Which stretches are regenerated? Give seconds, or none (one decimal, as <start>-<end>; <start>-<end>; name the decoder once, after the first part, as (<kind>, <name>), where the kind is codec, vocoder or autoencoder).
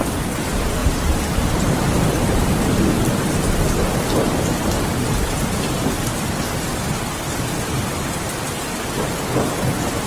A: 0.8-2.9 (vocoder, BigVGAN v2)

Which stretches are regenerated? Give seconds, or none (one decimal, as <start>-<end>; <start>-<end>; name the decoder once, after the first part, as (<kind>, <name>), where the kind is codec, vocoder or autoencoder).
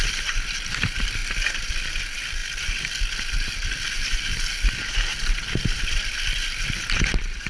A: 0.0-1.2 (vocoder, BigVGAN v2); 1.7-7.5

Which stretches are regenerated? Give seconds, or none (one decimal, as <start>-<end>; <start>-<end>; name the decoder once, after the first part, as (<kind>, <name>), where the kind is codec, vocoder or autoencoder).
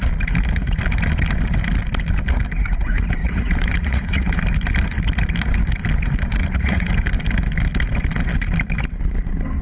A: 3.2-4.4 (vocoder, Vocos); 6.4-6.9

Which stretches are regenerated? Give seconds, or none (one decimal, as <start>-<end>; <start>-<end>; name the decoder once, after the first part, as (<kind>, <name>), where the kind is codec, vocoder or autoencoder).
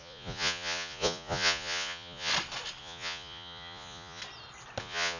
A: 0.0-2.3 (vocoder, Vocos); 2.8-4.2; 4.8-5.2